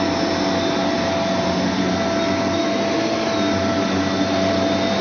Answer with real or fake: real